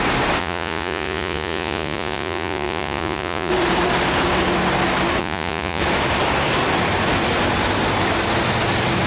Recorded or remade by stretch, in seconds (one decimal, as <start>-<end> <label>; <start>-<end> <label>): 0.0-0.4 recorded; 0.4-3.5 remade; 3.5-5.2 recorded; 5.2-5.8 remade; 5.8-9.1 recorded